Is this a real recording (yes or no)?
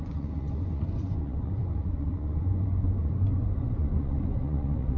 no